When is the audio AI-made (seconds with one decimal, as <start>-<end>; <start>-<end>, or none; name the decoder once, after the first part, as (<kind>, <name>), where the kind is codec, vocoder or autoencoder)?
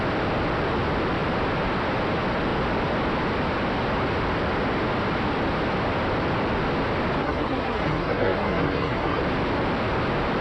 7.2-9.2 (codec, SNAC)